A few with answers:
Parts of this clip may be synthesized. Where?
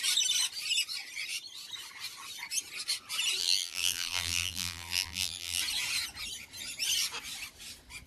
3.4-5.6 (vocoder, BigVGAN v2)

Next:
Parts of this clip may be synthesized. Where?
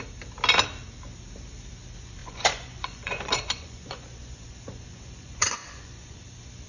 2.2-6.2 (vocoder, Vocos)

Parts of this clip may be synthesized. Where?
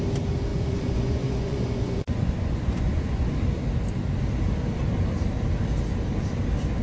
0.5-3.3 (vocoder, Vocos)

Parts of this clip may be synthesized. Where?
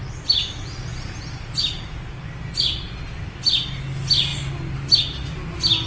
none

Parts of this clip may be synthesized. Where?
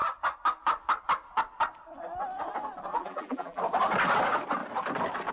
2.9-3.6 (vocoder, BigVGAN v2)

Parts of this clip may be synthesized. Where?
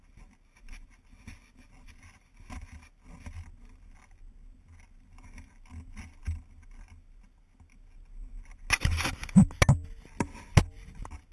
none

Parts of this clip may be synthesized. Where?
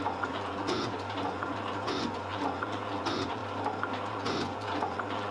0.0-3.4 (vocoder, Vocos); 4.1-5.3